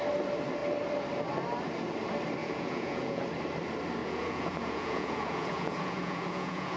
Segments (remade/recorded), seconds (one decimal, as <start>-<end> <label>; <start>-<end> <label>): 0.0-2.4 recorded; 2.4-3.2 remade; 3.2-4.0 recorded; 4.0-6.8 remade